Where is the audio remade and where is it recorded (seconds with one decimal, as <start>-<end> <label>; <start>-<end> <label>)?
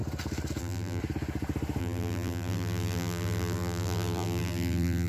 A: 0.0-0.6 recorded; 0.6-1.0 remade; 1.0-1.8 recorded; 1.8-5.1 remade